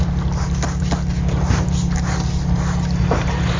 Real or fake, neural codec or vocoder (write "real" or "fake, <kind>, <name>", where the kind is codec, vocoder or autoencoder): fake, vocoder, BigVGAN v2